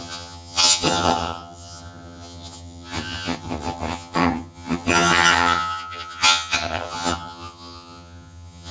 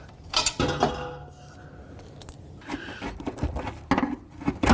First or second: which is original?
second